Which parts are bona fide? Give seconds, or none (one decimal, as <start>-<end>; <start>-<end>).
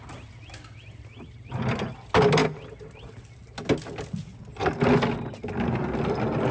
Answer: 0.0-6.5